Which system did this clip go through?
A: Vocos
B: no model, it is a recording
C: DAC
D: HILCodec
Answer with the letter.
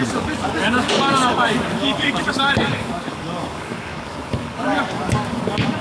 C